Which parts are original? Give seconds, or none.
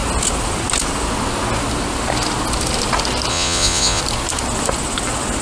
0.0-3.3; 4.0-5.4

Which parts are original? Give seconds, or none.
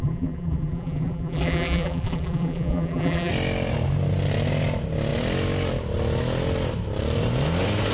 3.3-7.9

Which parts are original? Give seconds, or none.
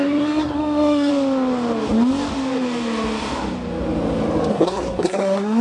1.1-4.5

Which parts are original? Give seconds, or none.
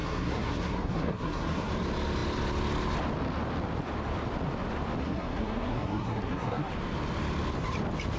1.7-5.0; 6.7-8.2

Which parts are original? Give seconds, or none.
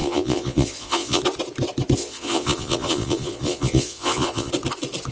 1.2-2.0; 4.5-5.1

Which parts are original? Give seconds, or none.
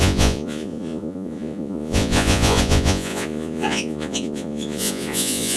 none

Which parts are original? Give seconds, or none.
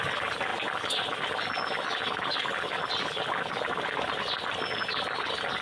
0.0-5.6